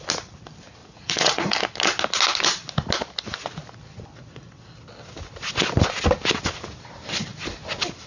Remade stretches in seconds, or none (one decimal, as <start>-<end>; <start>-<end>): 0.8-1.6